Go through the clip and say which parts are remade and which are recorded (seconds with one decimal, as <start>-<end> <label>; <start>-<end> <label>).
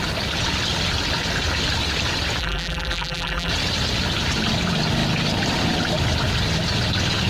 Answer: 0.0-2.4 recorded; 2.4-3.5 remade; 3.5-7.3 recorded